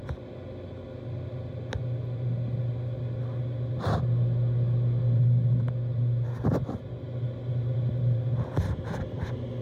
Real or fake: real